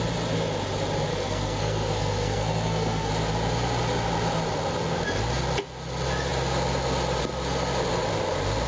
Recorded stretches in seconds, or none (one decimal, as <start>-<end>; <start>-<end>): 0.0-1.1; 3.1-8.7